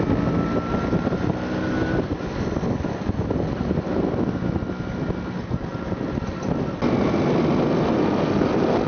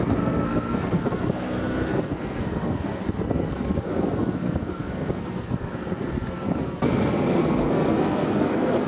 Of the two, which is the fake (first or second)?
second